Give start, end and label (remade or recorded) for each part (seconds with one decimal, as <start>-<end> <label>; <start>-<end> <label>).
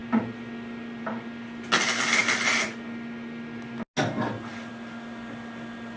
0.0-6.0 recorded